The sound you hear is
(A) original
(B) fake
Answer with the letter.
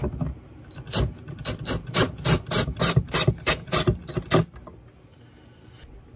A